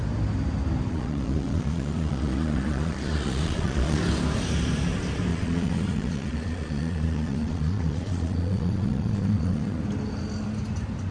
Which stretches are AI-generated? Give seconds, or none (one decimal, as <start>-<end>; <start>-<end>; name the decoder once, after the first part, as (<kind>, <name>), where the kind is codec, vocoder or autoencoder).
0.9-4.0 (vocoder, Vocos); 5.3-9.8